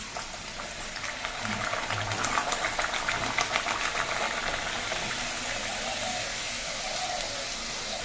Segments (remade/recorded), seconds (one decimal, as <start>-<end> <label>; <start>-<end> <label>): 0.0-6.3 recorded; 6.3-6.8 remade; 6.8-8.0 recorded